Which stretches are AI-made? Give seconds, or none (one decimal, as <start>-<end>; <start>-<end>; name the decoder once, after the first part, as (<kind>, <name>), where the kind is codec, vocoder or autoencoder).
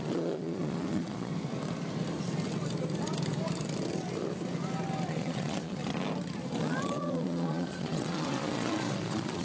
0.0-1.3 (vocoder, Vocos); 5.1-5.8; 6.6-9.4